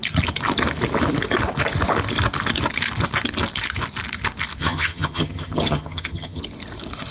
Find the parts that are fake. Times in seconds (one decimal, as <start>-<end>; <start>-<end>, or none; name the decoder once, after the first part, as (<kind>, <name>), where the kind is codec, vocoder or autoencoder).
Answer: 4.6-6.4 (vocoder, HiFi-GAN)